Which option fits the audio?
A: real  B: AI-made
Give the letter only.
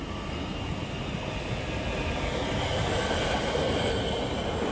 A